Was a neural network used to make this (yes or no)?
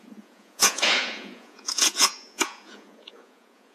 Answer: yes